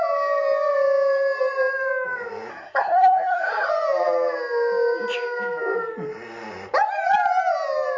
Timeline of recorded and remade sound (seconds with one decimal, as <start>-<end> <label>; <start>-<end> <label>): 0.0-2.5 recorded; 2.5-3.7 remade; 3.7-8.0 recorded